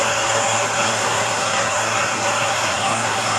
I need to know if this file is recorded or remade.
remade